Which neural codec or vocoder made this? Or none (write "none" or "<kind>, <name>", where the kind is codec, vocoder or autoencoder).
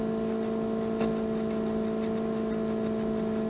none